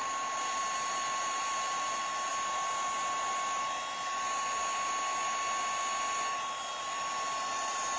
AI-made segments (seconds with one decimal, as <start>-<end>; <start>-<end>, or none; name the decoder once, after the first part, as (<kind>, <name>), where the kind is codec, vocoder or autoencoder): 0.6-2.3 (vocoder, BigVGAN v2); 6.8-8.0